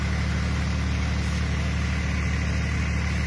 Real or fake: real